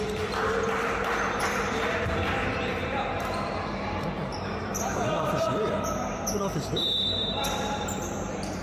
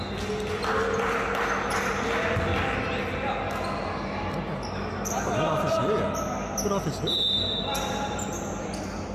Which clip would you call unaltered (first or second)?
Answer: second